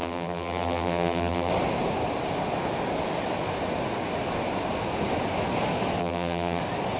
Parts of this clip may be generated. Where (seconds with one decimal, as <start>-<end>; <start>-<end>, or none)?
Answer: 0.0-1.5; 6.0-6.6